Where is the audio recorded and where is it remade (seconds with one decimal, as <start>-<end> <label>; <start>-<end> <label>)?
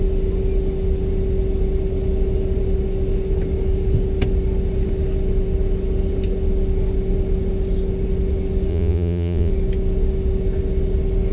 0.0-8.7 recorded; 8.7-9.5 remade; 9.5-11.3 recorded